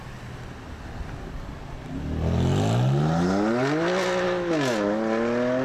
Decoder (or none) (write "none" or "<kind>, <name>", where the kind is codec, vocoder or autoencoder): none